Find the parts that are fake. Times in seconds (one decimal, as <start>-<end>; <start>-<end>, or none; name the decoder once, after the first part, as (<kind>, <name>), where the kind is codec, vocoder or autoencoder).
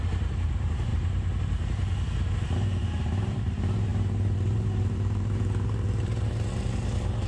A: 0.0-0.9 (vocoder, BigVGAN v2); 2.3-7.3